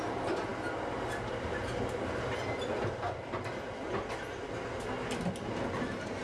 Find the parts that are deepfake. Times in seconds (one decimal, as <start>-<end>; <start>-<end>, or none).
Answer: none